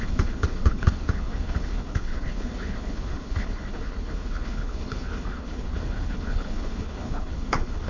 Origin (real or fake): fake